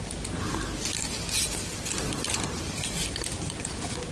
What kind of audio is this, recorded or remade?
recorded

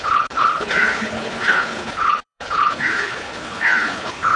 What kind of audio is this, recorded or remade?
remade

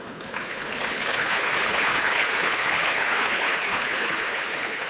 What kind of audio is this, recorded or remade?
remade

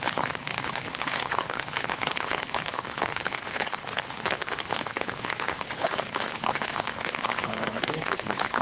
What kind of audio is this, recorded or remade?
remade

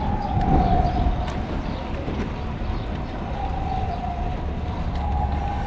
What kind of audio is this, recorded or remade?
recorded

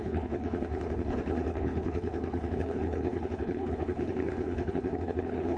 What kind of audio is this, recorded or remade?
remade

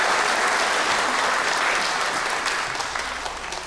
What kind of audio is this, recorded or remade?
recorded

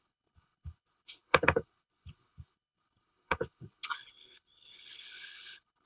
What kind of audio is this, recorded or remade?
remade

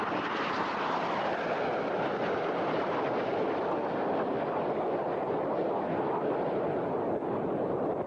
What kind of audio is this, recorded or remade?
recorded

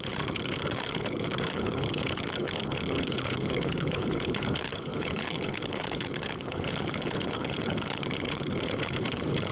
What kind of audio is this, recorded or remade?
remade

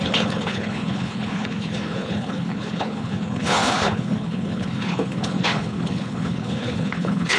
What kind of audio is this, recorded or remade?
remade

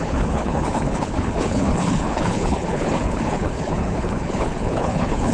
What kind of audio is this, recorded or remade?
remade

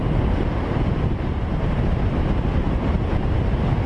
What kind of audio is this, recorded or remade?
recorded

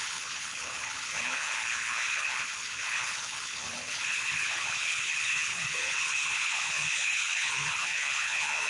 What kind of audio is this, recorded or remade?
remade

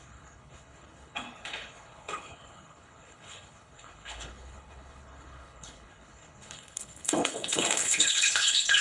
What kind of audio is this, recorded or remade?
remade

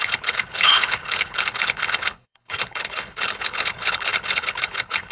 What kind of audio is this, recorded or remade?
remade